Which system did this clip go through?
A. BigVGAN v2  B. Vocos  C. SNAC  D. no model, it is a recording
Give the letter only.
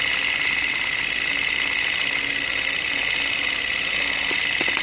D